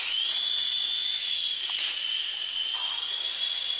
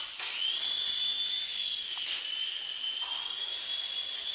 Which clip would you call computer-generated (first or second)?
first